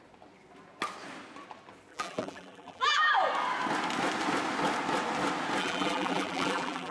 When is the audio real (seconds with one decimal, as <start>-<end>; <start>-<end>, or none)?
0.0-1.9; 3.1-5.6